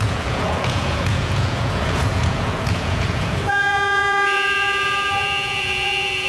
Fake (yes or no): yes